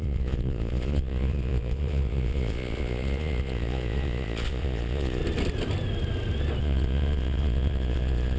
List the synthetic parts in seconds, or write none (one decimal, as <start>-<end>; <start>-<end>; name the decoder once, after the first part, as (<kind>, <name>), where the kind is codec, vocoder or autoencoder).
0.0-5.2 (vocoder, Vocos); 6.6-8.4